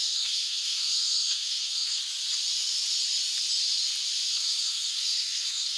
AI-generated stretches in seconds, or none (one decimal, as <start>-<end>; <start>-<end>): 0.0-2.0; 4.3-5.8